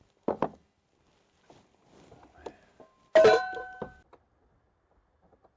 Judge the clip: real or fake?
real